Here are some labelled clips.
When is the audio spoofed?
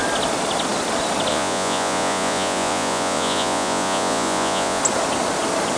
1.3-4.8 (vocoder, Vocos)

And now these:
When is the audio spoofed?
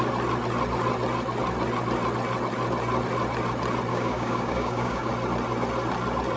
3.9-5.1 (codec, DAC)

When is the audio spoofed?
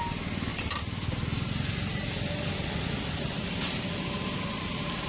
none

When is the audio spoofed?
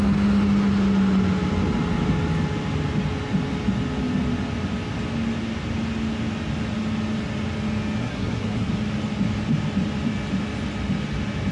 8.0-8.7 (codec, SNAC)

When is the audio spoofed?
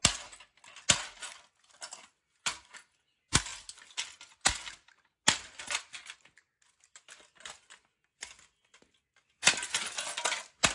none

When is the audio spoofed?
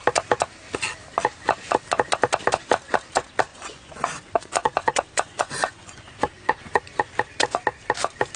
3.5-7.1 (vocoder, Vocos)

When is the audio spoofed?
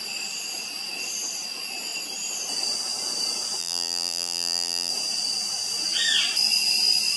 3.6-4.9 (vocoder, BigVGAN v2)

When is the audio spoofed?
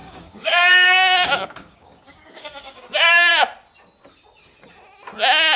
0.0-2.8 (codec, DAC)